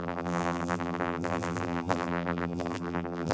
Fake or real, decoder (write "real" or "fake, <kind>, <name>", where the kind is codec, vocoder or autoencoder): fake, vocoder, BigVGAN v2